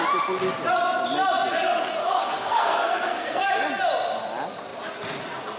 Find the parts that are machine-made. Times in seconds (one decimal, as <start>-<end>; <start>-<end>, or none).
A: 2.0-3.6